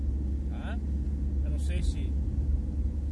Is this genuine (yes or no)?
yes